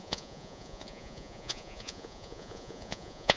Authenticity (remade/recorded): remade